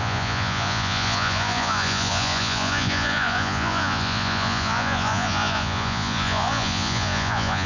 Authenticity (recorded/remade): remade